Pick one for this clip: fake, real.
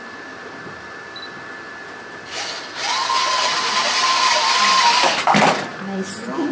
fake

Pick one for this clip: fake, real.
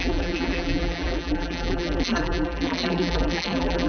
fake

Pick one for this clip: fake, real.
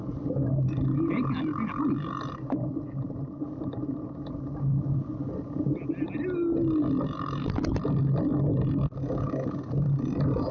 real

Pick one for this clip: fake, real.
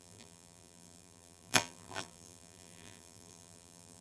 fake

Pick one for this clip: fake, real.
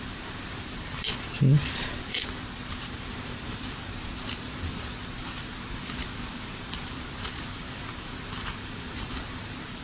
fake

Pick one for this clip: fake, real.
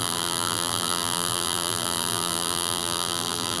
fake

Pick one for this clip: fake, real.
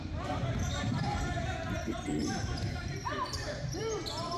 fake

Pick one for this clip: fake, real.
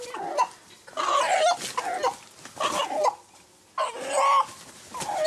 real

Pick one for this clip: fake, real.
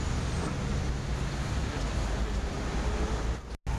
real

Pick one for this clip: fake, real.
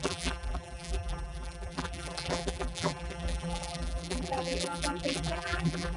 fake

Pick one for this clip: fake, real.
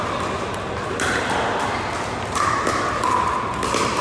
real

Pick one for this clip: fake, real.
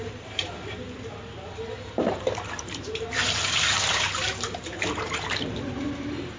fake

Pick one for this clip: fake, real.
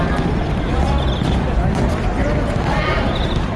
real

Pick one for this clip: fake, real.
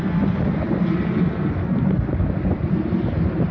real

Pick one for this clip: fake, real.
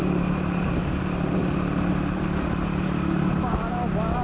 fake